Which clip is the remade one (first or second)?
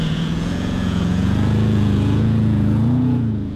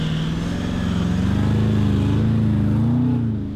first